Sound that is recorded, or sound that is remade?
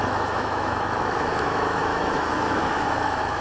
remade